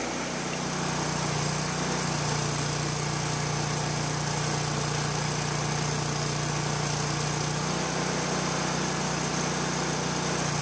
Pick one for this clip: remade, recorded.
recorded